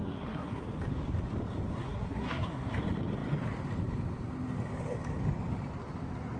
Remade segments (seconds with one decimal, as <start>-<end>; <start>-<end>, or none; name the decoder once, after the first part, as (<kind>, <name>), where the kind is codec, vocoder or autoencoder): 0.0-0.6 (codec, SNAC); 1.7-2.7